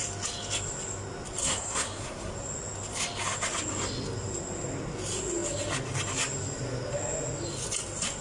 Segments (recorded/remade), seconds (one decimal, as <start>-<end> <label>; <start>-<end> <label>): 0.0-1.4 recorded; 1.4-2.3 remade; 2.3-8.2 recorded